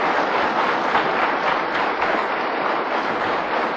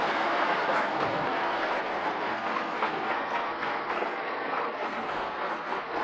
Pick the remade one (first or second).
second